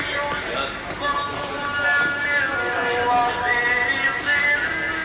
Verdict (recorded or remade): recorded